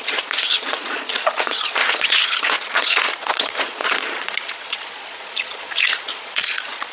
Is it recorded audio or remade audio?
remade